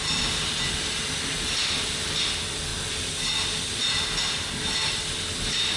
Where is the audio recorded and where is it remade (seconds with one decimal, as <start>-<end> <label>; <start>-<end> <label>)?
0.0-5.8 recorded